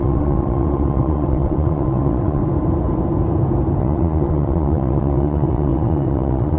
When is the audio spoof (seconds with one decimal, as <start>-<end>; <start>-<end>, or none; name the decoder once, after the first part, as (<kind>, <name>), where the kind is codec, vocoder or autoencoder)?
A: 0.0-2.4 (vocoder, WaveNeXt); 3.8-6.6